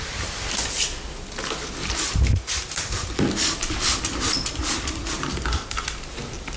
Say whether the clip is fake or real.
real